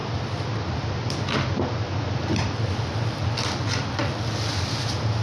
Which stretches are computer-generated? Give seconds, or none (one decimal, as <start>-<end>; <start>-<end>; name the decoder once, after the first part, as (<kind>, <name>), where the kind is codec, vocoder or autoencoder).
0.0-4.0 (vocoder, BigVGAN v2); 4.5-5.2